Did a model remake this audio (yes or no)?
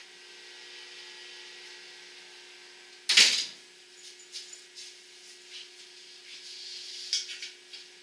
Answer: no